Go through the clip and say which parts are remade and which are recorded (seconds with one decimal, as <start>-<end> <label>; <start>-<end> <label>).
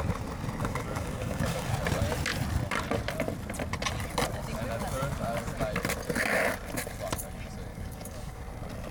0.0-0.6 recorded; 0.6-1.7 remade; 1.7-7.7 recorded; 7.7-8.4 remade; 8.4-8.9 recorded